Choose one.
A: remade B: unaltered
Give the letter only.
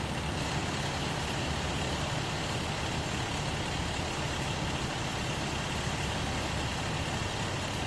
B